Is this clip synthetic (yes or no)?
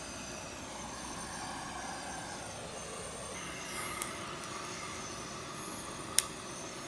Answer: no